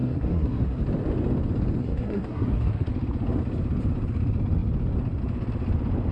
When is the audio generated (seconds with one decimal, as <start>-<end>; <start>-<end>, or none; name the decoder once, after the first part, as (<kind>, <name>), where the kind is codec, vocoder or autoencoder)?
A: 0.0-0.8 (codec, SNAC); 1.8-2.9